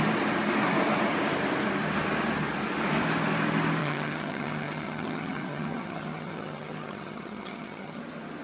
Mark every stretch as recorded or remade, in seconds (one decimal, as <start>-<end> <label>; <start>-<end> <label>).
0.0-3.8 recorded; 3.8-8.0 remade; 8.0-8.4 recorded